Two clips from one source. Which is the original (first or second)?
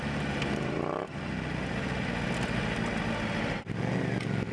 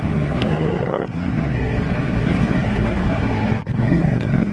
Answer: first